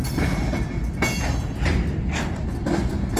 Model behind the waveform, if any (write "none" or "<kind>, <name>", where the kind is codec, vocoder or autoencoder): none